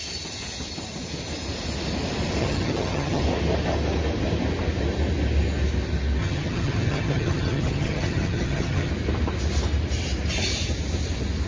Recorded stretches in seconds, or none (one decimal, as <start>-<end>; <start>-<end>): 0.0-2.4; 3.2-6.2; 8.9-11.5